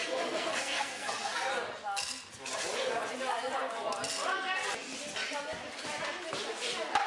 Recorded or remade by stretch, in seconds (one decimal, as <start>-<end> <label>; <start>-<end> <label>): 0.0-1.5 remade; 1.5-7.1 recorded